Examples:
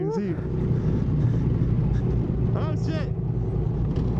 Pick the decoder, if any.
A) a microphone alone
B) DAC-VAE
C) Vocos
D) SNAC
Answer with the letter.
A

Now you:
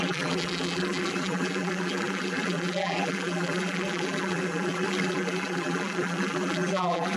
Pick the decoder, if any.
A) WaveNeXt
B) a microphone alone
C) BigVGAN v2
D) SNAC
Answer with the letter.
C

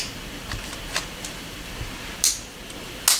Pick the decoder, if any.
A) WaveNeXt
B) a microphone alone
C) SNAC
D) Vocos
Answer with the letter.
B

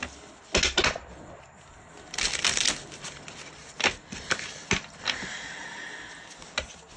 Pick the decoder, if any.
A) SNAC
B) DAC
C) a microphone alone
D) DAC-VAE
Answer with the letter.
C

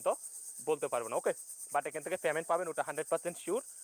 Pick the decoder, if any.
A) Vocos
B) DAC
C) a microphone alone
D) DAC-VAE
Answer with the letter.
C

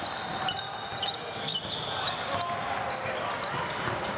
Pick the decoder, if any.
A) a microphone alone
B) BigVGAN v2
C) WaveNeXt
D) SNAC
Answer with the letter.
A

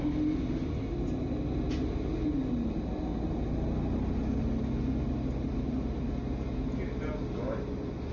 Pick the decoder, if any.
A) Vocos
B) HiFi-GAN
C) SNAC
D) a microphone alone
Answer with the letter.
D